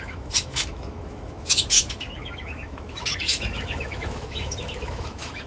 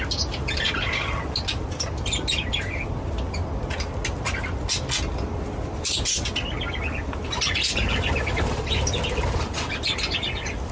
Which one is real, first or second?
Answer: second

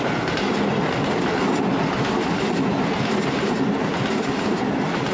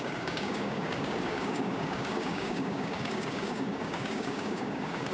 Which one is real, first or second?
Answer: first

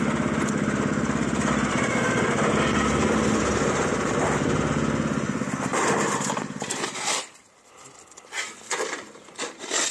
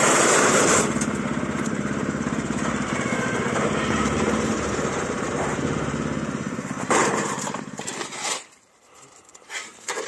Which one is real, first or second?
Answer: first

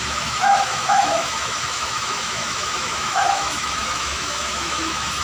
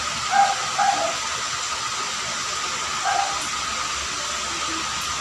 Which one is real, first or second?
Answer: second